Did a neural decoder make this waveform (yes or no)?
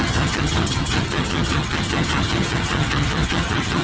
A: yes